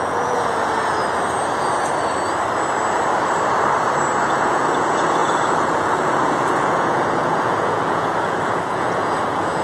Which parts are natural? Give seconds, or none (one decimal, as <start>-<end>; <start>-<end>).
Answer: 1.0-4.3